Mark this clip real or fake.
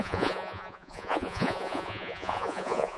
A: fake